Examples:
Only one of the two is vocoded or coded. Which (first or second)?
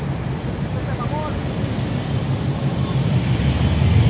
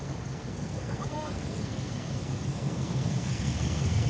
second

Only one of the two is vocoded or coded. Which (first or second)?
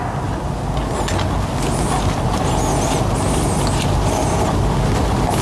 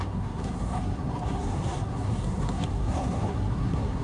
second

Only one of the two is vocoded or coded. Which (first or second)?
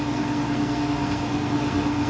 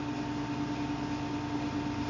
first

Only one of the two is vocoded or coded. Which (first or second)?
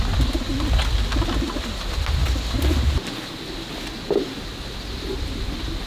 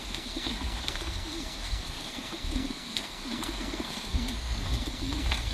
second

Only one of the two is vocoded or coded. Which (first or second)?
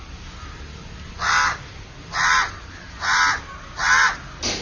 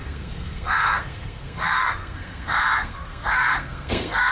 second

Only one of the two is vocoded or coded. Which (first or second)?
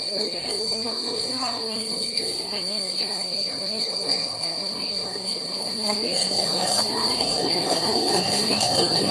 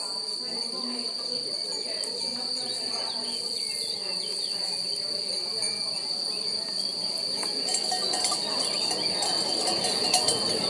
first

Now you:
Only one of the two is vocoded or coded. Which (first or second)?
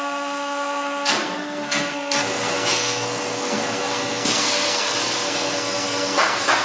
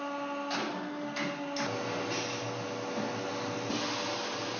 first